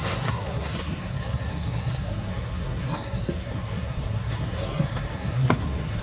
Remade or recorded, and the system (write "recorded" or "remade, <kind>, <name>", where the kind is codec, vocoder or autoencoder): remade, codec, SNAC